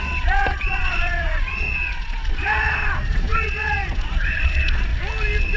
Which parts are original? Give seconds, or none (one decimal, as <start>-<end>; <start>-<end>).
4.9-5.6